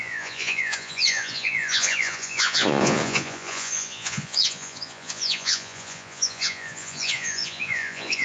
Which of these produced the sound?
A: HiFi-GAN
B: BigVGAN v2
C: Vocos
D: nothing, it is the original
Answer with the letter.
C